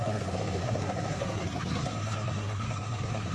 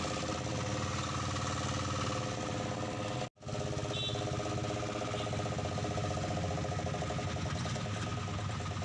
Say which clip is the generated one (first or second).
first